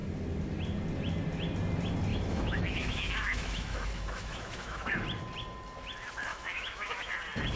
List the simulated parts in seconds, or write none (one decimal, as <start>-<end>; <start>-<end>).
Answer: 2.1-4.9; 6.3-7.1